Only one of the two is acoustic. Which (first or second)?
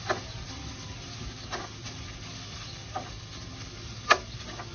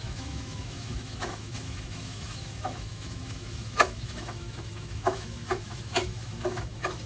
first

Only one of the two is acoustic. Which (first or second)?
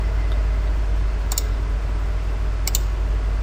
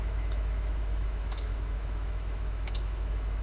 first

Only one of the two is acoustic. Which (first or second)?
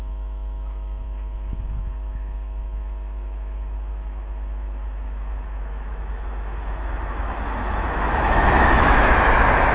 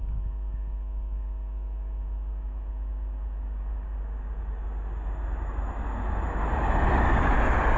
second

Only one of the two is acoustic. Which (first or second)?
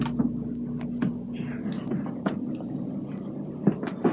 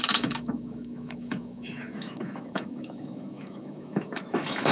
first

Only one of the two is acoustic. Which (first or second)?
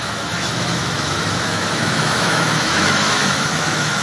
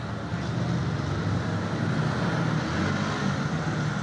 second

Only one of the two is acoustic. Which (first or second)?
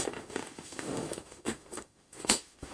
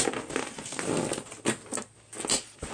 second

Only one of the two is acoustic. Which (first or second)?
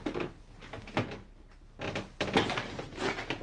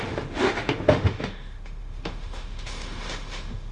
first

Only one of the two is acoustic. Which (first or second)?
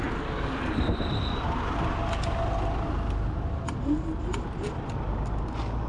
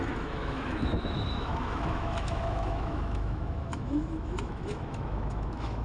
first